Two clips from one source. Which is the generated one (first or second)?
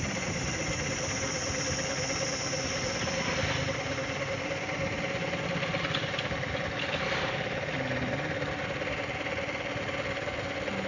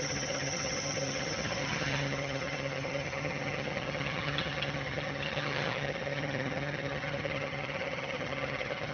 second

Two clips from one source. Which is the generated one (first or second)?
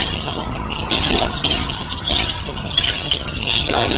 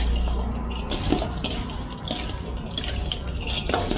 first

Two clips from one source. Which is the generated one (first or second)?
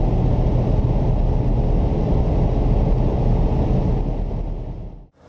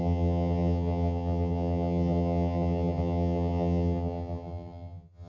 second